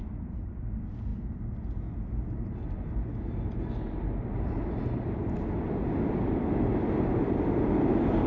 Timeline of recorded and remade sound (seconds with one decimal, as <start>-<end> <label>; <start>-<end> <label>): 0.0-8.3 recorded